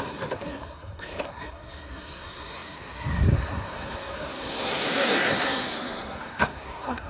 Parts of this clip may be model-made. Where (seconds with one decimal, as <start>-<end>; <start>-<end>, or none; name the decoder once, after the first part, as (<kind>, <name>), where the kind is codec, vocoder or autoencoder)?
0.0-7.1 (codec, SNAC)